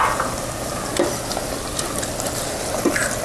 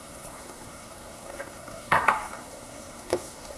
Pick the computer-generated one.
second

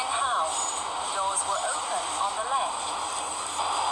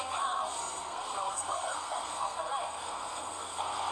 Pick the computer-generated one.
second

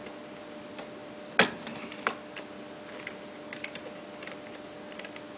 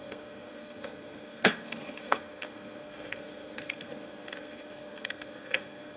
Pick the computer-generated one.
second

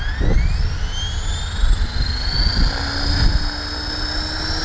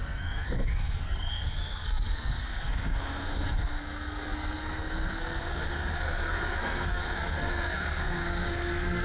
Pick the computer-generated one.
second